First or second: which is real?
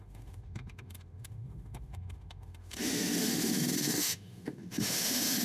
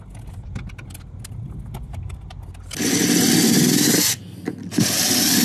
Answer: second